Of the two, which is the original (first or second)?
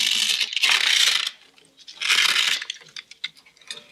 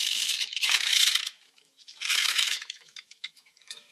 first